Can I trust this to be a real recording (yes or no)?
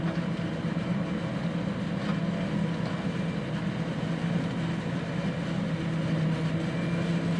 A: yes